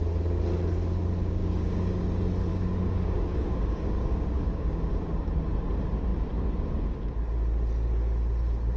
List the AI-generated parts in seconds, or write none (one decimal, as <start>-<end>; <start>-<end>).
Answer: 1.4-2.0; 2.5-5.4